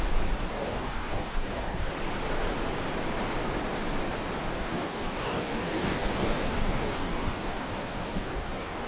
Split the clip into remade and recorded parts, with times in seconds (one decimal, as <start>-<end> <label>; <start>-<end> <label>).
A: 0.0-0.5 recorded; 0.5-1.9 remade; 1.9-4.6 recorded; 4.6-8.9 remade

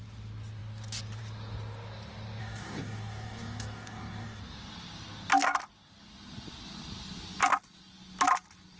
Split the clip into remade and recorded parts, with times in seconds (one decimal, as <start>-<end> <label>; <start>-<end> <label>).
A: 0.0-2.4 recorded; 2.4-4.4 remade; 4.4-8.8 recorded

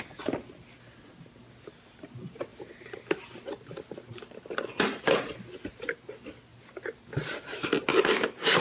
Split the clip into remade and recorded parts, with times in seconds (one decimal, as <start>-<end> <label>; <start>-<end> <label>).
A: 0.0-7.9 recorded; 7.9-8.6 remade

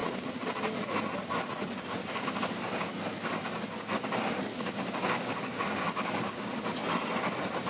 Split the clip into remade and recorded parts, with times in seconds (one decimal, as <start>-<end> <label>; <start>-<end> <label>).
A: 0.0-2.0 recorded; 2.0-2.9 remade; 2.9-4.5 recorded; 4.5-6.6 remade; 6.6-7.7 recorded

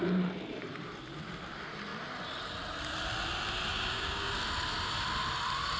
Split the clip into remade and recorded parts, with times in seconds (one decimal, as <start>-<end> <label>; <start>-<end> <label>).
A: 0.0-3.7 recorded; 3.7-4.3 remade; 4.3-5.8 recorded